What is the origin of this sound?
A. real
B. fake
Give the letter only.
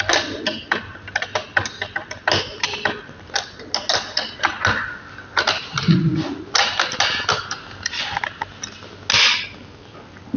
A